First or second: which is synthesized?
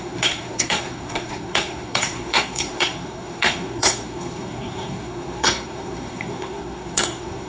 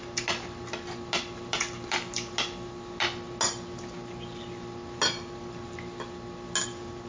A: first